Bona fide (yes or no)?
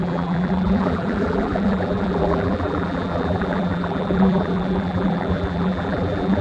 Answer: no